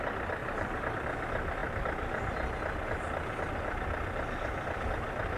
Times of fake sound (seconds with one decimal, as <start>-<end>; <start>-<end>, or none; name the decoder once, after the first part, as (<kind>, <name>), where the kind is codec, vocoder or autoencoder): 0.4-0.9 (vocoder, BigVGAN v2)